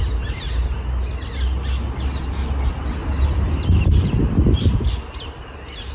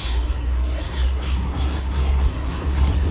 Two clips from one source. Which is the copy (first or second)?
second